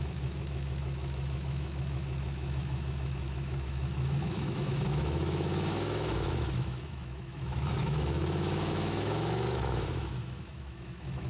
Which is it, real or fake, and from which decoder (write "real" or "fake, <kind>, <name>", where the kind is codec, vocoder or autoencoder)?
fake, autoencoder, DAC-VAE